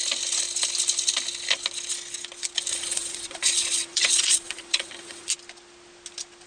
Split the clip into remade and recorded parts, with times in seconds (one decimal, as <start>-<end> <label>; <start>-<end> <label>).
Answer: 0.0-2.7 recorded; 2.7-5.3 remade; 5.3-6.5 recorded